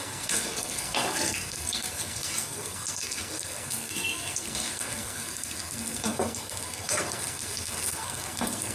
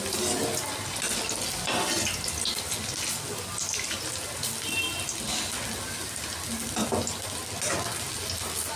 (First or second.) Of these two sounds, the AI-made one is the first